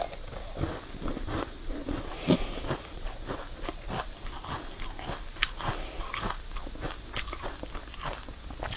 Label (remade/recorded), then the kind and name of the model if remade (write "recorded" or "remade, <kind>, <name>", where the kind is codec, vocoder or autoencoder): recorded